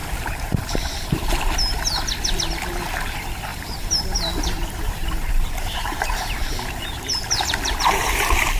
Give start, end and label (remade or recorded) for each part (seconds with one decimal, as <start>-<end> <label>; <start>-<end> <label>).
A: 0.0-1.3 remade; 1.3-3.5 recorded; 3.5-8.6 remade